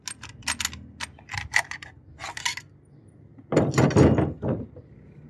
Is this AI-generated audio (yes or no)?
no